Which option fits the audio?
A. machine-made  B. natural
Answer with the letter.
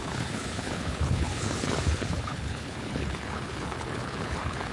A